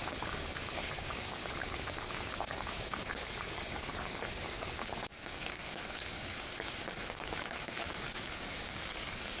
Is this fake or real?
fake